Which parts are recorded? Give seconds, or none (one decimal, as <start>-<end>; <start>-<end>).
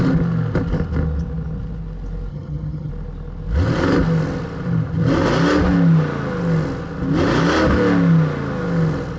0.0-2.3; 2.9-9.2